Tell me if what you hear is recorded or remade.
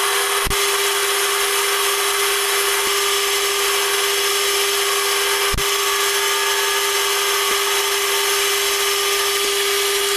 recorded